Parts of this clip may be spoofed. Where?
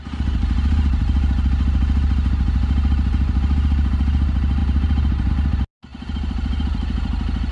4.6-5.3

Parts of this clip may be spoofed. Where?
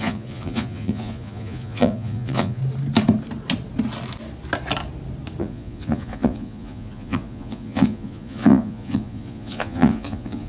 0.0-2.6; 5.4-10.5